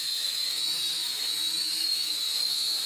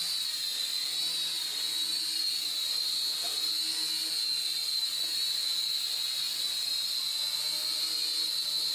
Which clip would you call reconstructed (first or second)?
first